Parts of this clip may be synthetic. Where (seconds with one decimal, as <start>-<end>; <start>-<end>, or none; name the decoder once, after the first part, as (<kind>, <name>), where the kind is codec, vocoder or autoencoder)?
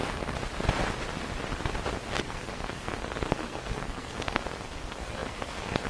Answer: 2.2-5.9 (codec, SNAC)